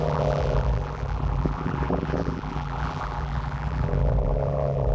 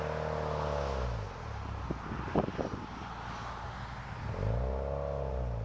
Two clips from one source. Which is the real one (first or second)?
second